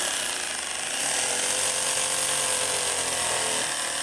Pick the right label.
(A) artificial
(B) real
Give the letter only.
B